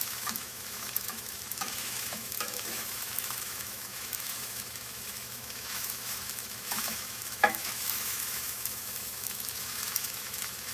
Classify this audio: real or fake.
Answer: fake